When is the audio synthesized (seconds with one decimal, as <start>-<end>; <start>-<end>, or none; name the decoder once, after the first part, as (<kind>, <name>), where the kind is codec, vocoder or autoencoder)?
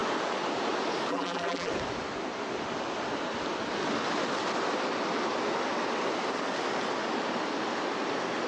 1.1-1.7 (vocoder, BigVGAN v2)